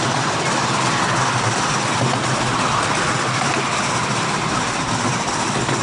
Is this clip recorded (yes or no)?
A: yes